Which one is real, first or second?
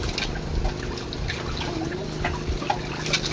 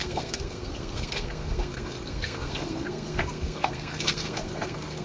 first